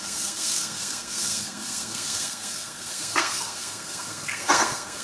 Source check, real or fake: fake